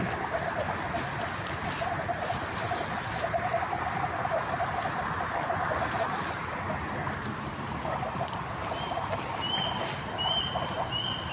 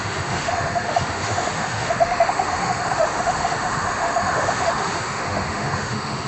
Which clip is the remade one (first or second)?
second